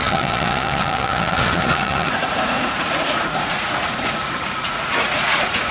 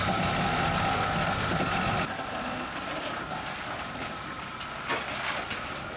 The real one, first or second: second